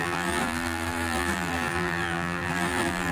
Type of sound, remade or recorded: remade